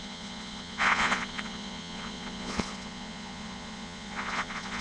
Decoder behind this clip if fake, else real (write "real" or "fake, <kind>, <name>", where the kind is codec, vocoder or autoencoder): fake, vocoder, Vocos